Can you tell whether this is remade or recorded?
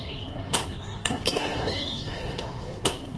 remade